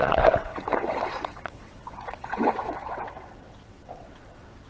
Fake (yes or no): yes